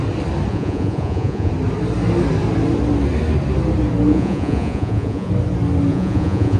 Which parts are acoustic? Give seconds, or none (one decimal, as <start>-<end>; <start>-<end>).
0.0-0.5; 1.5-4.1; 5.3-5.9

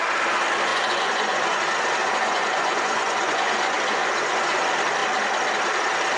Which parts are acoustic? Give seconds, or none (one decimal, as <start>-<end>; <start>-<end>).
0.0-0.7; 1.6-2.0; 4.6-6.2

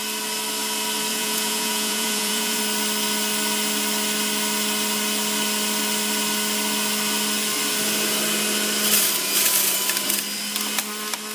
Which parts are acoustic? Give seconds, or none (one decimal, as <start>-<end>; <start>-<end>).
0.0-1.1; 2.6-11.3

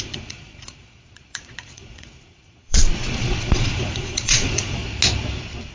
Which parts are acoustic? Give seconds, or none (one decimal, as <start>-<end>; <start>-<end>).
4.8-5.7

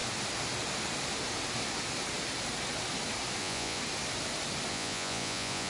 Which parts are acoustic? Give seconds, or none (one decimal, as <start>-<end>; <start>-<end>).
0.0-3.4; 3.8-4.7

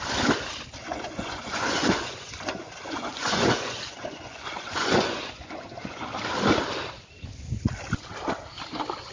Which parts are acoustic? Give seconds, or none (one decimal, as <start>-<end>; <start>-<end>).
0.0-0.8; 6.0-9.1

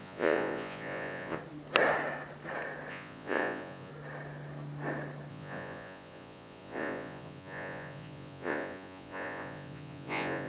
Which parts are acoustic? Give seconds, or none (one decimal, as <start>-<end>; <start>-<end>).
1.4-2.9; 3.9-5.3

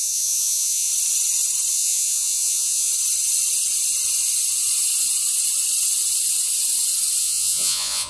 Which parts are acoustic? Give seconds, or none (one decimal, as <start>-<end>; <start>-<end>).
0.9-1.7; 2.9-7.2